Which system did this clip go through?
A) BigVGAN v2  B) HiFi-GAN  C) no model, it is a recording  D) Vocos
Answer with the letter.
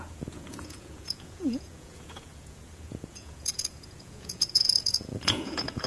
D